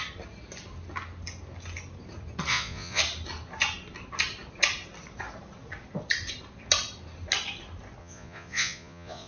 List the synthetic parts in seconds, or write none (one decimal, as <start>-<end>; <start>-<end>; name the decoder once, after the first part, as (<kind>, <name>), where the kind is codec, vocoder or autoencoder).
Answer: 2.5-3.0 (vocoder, Vocos); 8.0-9.3